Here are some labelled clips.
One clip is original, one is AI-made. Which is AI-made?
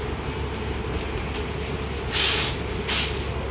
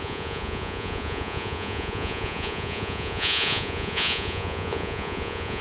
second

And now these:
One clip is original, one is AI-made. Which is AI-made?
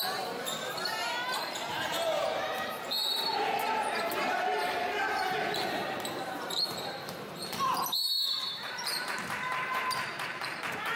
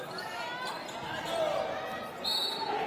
first